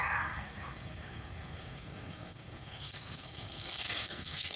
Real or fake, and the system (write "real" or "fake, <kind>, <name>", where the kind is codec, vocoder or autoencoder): fake, codec, SNAC